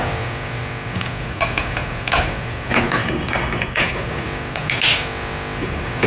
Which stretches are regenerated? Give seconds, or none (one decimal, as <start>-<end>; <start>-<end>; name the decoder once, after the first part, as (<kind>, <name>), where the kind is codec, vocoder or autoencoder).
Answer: 3.0-3.8 (codec, DAC)